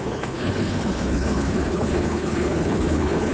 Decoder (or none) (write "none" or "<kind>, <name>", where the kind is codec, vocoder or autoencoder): codec, HILCodec